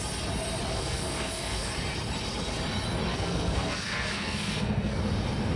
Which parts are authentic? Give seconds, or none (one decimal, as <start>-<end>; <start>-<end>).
0.0-0.7; 1.7-3.1; 5.0-5.6